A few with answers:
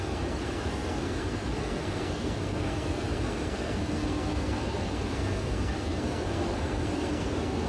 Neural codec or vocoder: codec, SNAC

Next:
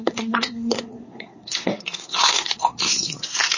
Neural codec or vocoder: codec, SNAC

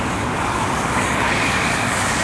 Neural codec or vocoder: codec, DAC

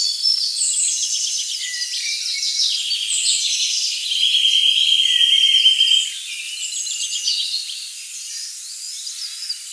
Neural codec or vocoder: none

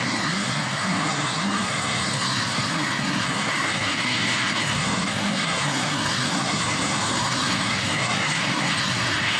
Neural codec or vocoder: codec, SNAC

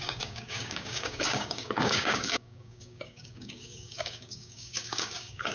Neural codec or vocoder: codec, DAC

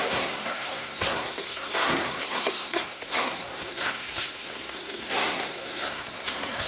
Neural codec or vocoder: codec, SNAC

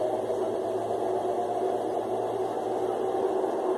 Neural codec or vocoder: none